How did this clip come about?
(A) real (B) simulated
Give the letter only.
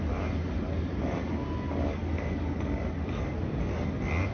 A